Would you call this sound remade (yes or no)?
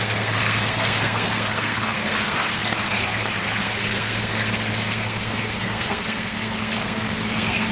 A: yes